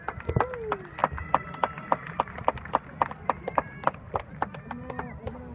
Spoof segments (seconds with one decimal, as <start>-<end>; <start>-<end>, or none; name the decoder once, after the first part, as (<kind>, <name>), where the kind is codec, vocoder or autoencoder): 1.0-4.3 (vocoder, BigVGAN v2)